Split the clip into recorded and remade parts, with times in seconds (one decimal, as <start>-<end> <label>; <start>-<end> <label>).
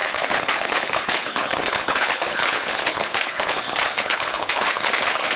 0.0-5.4 remade